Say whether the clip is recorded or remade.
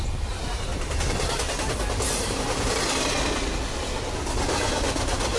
recorded